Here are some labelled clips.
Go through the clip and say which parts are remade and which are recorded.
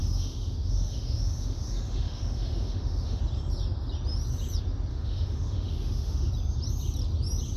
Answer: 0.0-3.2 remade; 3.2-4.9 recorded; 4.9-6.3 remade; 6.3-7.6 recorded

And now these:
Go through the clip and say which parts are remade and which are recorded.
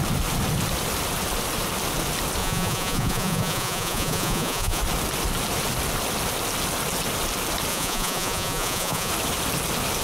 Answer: 0.0-2.4 recorded; 2.4-4.8 remade; 4.8-7.7 recorded; 7.7-9.1 remade; 9.1-10.0 recorded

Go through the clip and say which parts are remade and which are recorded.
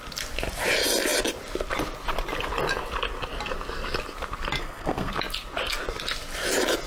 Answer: 0.0-4.6 recorded; 4.6-5.1 remade; 5.1-6.9 recorded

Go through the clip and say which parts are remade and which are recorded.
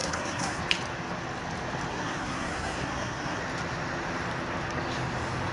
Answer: 0.0-0.6 remade; 0.6-1.9 recorded; 1.9-3.4 remade; 3.4-5.5 recorded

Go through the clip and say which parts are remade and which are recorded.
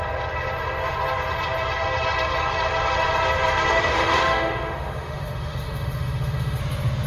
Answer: 0.0-3.7 recorded; 3.7-6.6 remade; 6.6-7.1 recorded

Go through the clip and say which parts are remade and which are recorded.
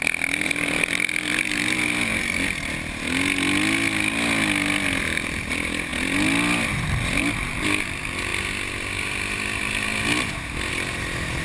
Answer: 0.0-11.4 recorded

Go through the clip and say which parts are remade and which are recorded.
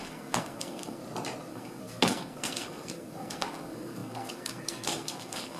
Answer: 0.0-1.0 remade; 1.0-1.5 recorded; 1.5-5.6 remade